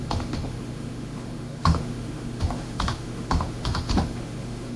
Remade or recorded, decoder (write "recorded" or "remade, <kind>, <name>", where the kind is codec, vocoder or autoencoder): remade, autoencoder, DAC-VAE